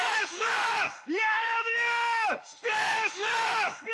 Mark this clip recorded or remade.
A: remade